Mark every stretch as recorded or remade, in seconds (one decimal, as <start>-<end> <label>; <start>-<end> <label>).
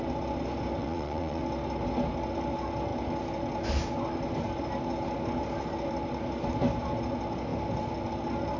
0.0-0.8 recorded; 0.8-1.4 remade; 1.4-8.6 recorded